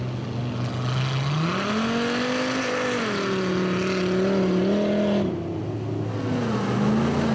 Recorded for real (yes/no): yes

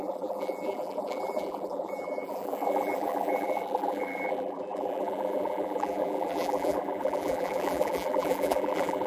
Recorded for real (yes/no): no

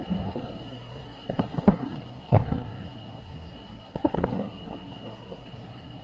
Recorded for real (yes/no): no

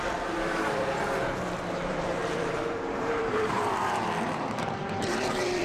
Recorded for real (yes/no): no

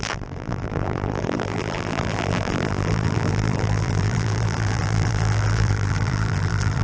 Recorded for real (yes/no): no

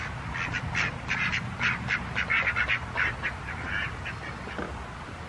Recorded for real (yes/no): yes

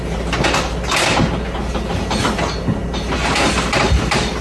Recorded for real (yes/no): yes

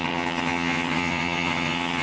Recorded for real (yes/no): no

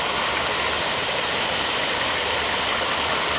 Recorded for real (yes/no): yes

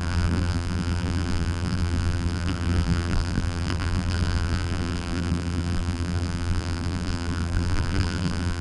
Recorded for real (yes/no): no